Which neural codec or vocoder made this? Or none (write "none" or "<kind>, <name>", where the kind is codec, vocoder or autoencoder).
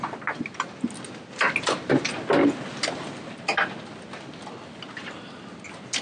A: none